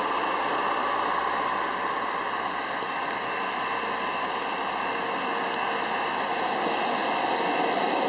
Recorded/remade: recorded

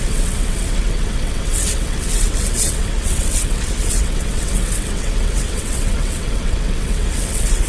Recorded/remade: remade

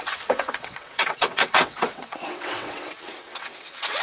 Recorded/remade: remade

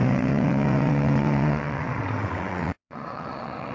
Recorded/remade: remade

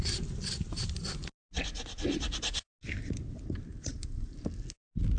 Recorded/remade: recorded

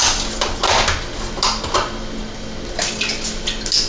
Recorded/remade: recorded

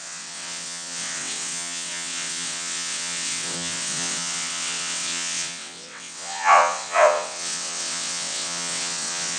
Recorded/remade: remade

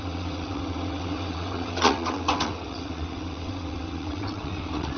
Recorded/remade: remade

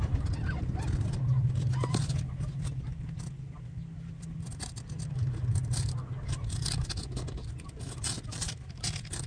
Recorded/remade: recorded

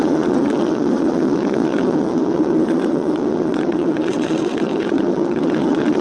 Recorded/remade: remade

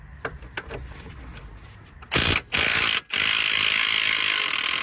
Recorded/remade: recorded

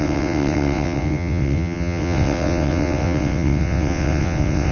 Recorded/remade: remade